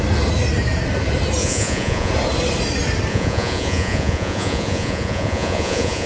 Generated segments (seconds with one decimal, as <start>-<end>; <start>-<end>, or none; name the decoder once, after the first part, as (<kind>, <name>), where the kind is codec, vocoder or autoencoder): 1.4-2.1 (vocoder, Vocos); 3.1-6.1